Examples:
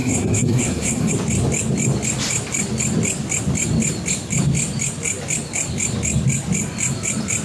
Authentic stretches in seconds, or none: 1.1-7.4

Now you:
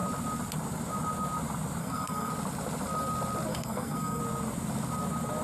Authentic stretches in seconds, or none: 0.0-1.8; 2.3-3.5; 4.2-5.4

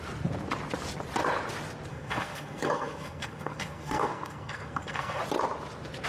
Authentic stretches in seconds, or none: 0.0-1.9; 5.2-6.1

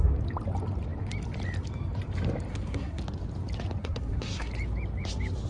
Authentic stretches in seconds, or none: 0.0-2.5; 3.0-3.8; 4.5-5.5

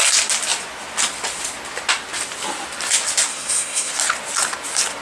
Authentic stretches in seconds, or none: 0.0-3.3; 3.9-5.0

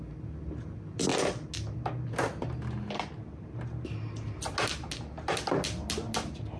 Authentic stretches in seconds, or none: 0.0-6.6

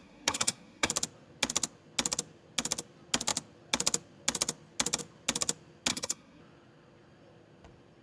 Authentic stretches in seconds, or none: 0.9-5.9; 6.4-8.0